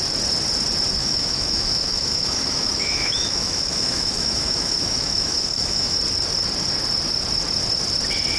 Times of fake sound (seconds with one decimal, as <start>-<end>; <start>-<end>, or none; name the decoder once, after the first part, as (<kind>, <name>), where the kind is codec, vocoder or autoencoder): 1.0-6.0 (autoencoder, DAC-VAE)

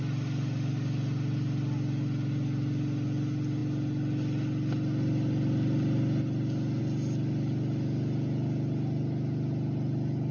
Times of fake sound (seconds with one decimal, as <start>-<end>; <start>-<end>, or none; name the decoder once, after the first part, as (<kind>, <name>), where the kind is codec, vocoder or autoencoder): none

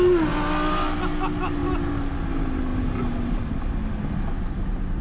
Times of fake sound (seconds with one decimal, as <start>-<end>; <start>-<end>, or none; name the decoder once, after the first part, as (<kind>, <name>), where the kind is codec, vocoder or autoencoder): none